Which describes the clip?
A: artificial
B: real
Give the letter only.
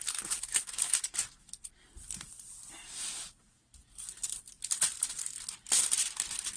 A